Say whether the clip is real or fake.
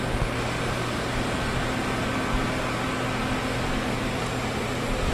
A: real